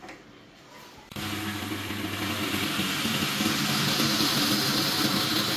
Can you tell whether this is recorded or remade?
recorded